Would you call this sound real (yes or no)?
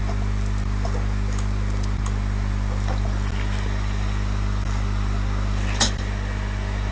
yes